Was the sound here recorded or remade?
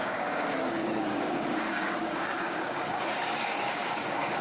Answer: remade